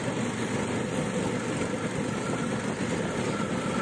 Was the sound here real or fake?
real